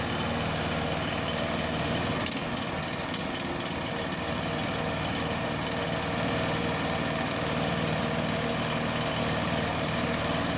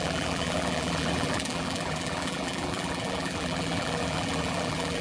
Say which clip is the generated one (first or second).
second